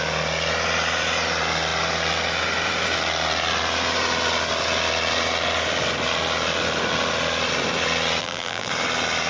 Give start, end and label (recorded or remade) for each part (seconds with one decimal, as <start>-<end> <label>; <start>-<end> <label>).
0.0-8.2 recorded; 8.2-8.7 remade; 8.7-9.3 recorded